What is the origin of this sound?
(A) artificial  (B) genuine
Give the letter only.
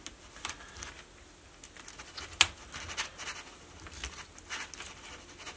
B